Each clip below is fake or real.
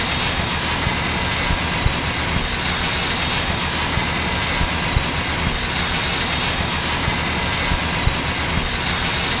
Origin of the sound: real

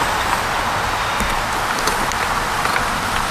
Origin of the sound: real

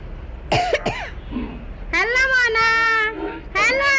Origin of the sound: real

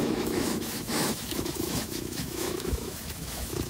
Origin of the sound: fake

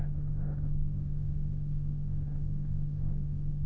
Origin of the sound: fake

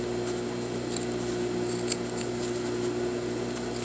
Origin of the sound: real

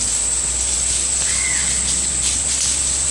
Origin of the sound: real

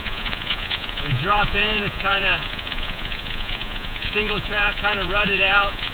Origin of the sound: fake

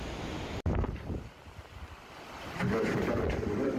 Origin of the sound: real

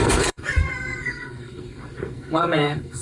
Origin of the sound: fake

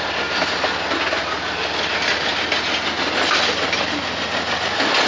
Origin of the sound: real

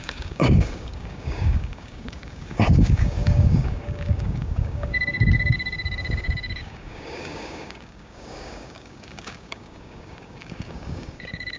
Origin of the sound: fake